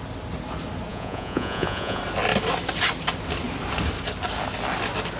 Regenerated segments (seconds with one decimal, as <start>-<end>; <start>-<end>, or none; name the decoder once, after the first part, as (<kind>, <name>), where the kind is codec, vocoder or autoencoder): 0.9-2.0 (vocoder, Vocos)